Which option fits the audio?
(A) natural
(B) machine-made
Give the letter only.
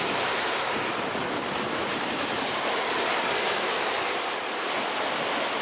A